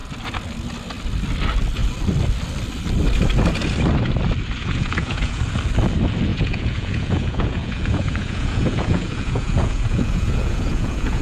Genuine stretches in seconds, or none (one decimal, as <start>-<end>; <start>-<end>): 0.0-4.6; 5.4-6.3